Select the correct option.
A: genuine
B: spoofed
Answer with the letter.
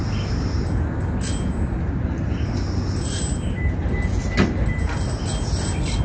A